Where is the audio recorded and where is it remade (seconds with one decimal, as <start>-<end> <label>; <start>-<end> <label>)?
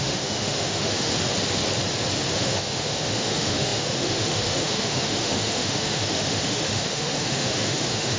0.0-1.1 remade; 1.1-2.3 recorded; 2.3-8.2 remade